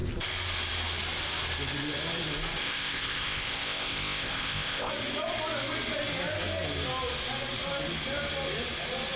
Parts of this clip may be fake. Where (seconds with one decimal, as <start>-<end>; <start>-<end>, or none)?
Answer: 2.6-4.9